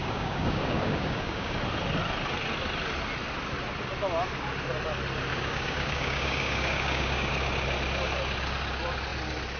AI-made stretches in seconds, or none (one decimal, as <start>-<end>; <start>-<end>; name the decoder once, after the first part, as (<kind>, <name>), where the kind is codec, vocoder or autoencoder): 0.0-1.6 (codec, DAC); 5.3-7.3